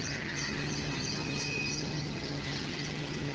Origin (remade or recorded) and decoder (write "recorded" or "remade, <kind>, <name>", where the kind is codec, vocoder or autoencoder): remade, vocoder, HiFi-GAN